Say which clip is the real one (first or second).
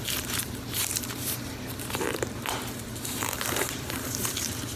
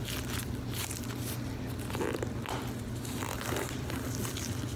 second